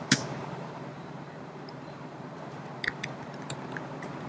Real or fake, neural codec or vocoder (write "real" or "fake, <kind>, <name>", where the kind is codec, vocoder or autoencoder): fake, vocoder, BigVGAN v2